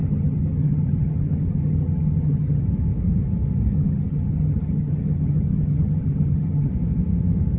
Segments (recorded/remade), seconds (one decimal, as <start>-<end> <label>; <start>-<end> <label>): 0.0-2.6 remade; 2.6-3.7 recorded; 3.7-6.7 remade; 6.7-7.6 recorded